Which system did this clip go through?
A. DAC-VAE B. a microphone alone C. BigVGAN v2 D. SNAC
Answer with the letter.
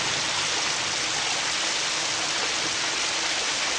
B